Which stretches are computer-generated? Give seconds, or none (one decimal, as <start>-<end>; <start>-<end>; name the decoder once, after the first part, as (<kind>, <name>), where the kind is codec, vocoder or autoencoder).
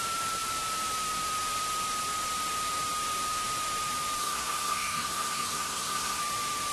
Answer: 4.2-6.2 (codec, SNAC)